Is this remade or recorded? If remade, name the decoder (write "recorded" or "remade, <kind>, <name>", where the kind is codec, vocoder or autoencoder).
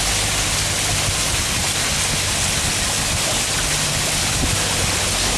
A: recorded